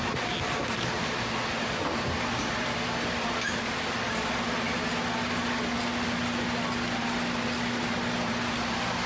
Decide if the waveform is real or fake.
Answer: real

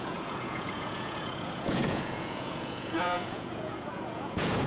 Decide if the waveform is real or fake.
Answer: fake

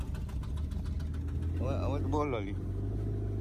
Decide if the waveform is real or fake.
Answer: real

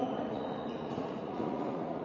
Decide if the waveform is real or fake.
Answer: fake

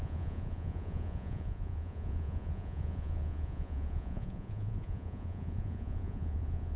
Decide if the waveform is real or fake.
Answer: fake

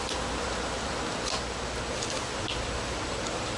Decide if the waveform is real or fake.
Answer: real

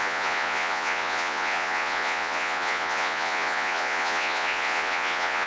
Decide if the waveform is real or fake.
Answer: fake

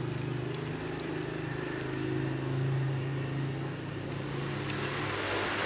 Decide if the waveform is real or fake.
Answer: real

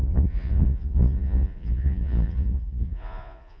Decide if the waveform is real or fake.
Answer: fake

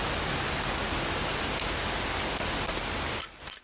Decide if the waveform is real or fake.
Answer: real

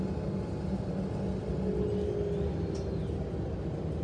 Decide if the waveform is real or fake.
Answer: real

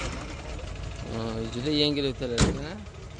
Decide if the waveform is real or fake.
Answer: real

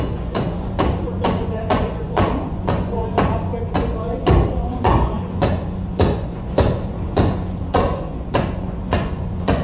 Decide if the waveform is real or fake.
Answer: fake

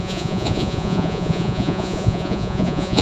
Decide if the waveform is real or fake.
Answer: fake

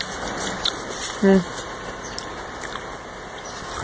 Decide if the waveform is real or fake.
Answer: real